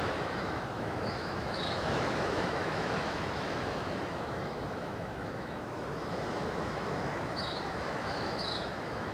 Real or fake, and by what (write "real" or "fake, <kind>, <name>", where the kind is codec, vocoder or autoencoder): fake, autoencoder, DAC-VAE